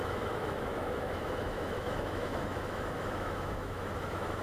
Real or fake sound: fake